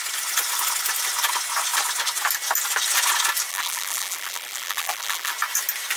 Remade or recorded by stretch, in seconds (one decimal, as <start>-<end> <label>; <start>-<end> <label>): 0.0-3.5 recorded; 3.5-5.3 remade; 5.3-6.0 recorded